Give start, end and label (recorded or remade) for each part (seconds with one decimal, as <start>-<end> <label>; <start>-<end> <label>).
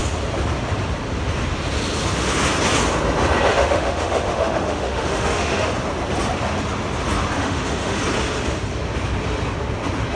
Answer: 0.0-3.5 recorded; 3.5-5.7 remade; 5.7-7.4 recorded; 7.4-8.0 remade; 8.0-10.2 recorded